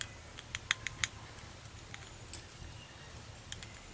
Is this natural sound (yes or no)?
yes